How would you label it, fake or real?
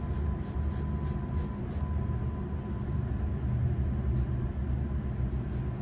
real